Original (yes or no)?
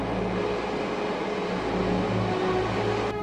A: yes